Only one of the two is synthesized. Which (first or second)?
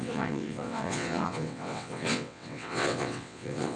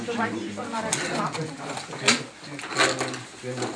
first